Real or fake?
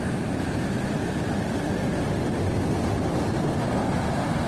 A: real